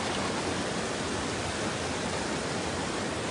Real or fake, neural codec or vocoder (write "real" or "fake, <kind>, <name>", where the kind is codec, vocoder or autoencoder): real